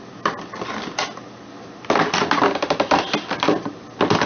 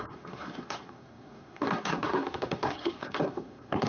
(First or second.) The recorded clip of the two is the first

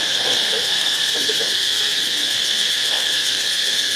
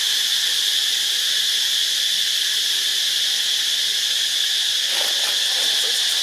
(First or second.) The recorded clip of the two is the second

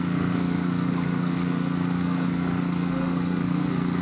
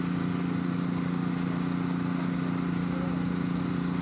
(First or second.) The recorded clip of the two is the second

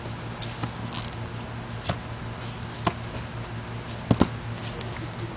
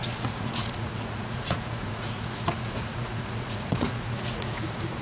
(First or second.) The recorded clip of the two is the first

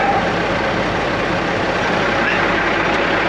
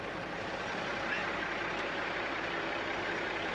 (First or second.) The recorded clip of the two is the first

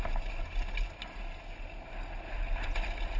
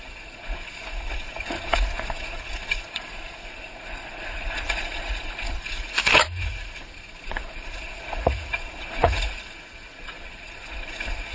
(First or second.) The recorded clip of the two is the first